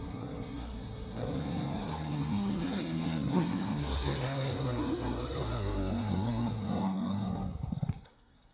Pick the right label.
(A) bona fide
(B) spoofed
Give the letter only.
B